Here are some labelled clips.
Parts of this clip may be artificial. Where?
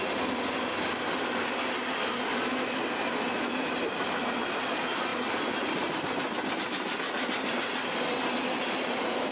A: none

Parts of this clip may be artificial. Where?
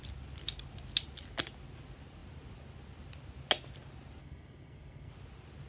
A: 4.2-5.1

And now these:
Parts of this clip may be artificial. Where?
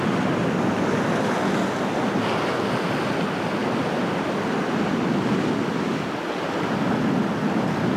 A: none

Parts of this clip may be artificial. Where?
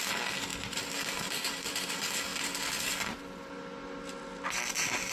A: 0.5-1.9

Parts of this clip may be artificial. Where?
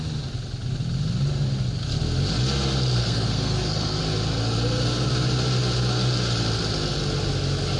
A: 3.0-4.0